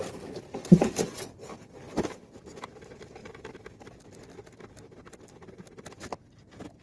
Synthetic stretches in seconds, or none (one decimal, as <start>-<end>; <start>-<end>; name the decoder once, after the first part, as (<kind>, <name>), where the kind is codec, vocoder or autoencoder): 3.2-4.4 (vocoder, BigVGAN v2)